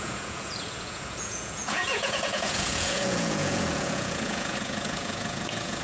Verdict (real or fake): fake